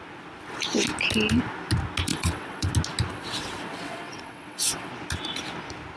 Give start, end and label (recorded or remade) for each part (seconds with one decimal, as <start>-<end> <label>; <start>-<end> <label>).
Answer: 0.0-2.1 recorded; 2.1-2.7 remade; 2.7-3.1 recorded; 3.1-4.9 remade; 4.9-6.0 recorded